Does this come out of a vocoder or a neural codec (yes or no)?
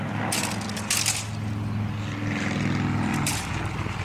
no